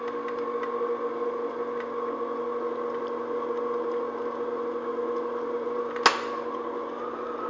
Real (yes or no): yes